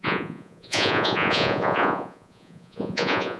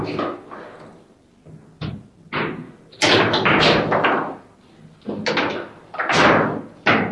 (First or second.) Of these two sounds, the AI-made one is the first